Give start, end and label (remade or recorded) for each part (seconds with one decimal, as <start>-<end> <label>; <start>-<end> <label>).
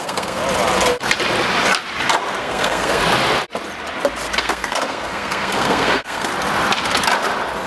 0.0-0.4 remade; 0.4-2.4 recorded; 2.4-3.0 remade; 3.0-4.4 recorded; 4.4-6.3 remade; 6.3-7.7 recorded